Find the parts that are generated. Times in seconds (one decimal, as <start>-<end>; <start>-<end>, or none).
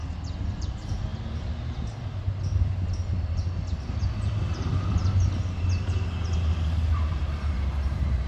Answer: 0.5-1.1; 4.3-4.7; 6.9-8.3